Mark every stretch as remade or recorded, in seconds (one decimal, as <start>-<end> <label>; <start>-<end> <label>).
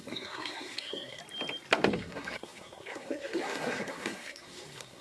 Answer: 0.0-1.2 remade; 1.2-1.9 recorded; 1.9-5.0 remade